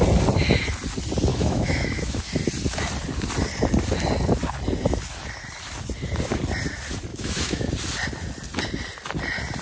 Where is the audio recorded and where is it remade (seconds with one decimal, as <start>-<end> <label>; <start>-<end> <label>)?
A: 0.0-1.3 recorded; 1.3-2.2 remade; 2.2-7.1 recorded; 7.1-7.7 remade; 7.7-9.6 recorded